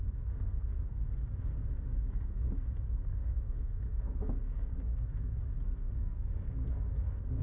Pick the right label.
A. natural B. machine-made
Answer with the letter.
B